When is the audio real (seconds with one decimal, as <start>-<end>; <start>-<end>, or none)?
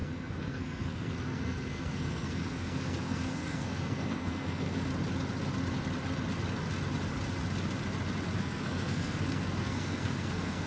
4.9-8.4